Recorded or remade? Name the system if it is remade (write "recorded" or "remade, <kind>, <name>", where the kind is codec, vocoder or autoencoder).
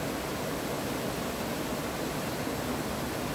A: recorded